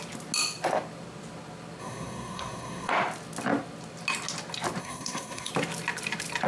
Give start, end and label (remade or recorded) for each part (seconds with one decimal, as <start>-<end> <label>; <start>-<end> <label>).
0.0-1.8 recorded; 1.8-2.9 remade; 2.9-4.8 recorded; 4.8-5.5 remade; 5.5-6.5 recorded

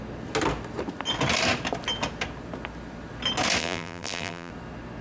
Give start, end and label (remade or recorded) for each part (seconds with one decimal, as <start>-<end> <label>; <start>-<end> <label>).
0.0-3.6 recorded; 3.6-4.5 remade; 4.5-5.0 recorded

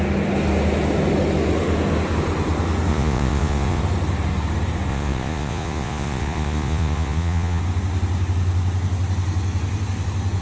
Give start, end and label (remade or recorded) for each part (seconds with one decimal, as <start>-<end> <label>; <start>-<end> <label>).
0.0-2.9 recorded; 2.9-3.8 remade; 3.8-4.9 recorded; 4.9-7.6 remade; 7.6-10.4 recorded

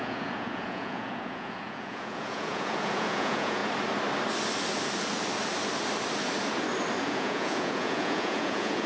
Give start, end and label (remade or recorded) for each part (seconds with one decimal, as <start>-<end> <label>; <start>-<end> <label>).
0.0-3.6 remade; 3.6-7.0 recorded; 7.0-8.9 remade